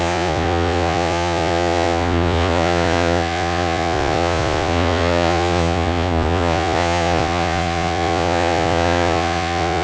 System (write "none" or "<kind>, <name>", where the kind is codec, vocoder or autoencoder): vocoder, Vocos